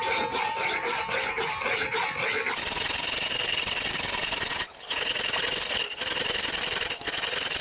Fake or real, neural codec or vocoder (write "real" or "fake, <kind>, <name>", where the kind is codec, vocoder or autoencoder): real